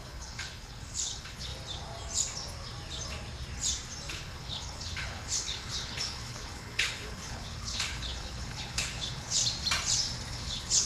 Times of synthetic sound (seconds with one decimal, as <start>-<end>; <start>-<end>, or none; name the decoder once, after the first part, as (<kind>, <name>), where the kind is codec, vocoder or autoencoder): 0.0-1.5 (codec, HILCodec); 4.1-9.4; 10.3-10.9